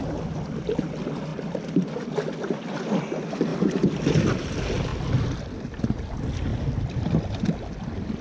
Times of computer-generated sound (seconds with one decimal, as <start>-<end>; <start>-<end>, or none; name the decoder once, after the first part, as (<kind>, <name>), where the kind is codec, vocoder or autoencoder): none